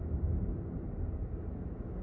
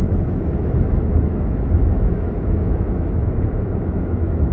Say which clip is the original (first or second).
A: first